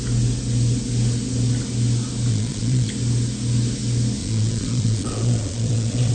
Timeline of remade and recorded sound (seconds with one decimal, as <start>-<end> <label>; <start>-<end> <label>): 0.0-2.3 recorded; 2.3-2.9 remade; 2.9-4.2 recorded; 4.2-6.1 remade